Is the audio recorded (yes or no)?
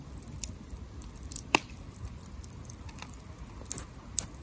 yes